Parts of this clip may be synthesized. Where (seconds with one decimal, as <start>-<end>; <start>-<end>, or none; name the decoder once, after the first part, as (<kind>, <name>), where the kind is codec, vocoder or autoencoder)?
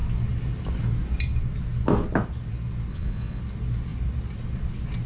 2.9-3.4 (vocoder, Vocos)